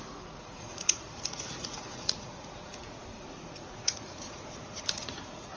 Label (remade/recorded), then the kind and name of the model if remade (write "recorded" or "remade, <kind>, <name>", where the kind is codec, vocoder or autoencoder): remade, vocoder, Vocos